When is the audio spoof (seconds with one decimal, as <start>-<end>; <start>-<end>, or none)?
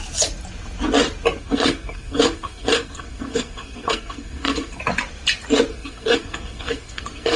1.4-4.8; 5.7-7.4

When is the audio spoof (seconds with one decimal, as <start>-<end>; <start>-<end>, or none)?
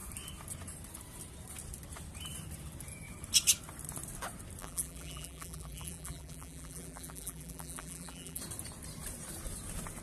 4.6-8.4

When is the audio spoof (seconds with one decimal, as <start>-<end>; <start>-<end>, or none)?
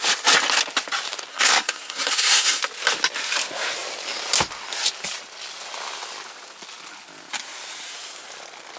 1.3-2.6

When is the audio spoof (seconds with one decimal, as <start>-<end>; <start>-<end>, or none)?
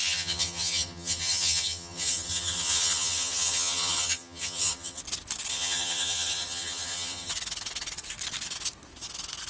0.0-5.0; 5.5-7.3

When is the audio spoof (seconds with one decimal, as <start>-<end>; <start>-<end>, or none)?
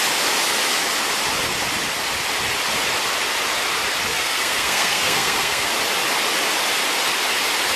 4.1-5.7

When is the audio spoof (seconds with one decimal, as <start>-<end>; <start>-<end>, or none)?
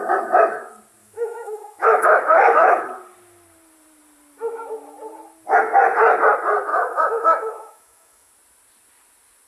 1.0-2.8; 6.7-8.3